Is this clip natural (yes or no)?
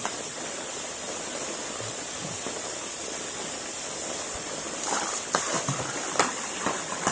no